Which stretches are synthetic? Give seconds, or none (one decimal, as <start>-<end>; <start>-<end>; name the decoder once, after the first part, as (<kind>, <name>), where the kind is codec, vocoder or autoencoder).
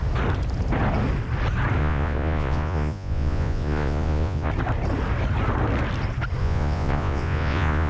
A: 1.8-4.5 (vocoder, Vocos); 6.4-7.9